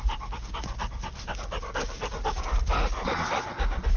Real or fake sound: real